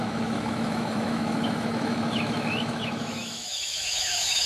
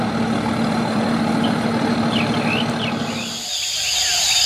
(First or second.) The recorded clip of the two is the second